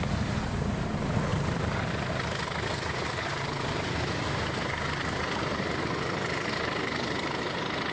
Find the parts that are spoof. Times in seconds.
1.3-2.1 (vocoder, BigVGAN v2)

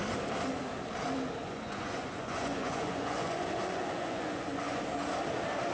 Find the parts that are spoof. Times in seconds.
1.4-4.8 (vocoder, Vocos)

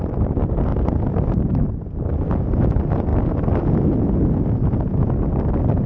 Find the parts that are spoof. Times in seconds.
none

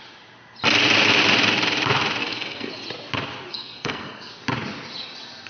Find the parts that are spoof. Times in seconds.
2.2-2.7 (codec, SNAC); 3.5-4.4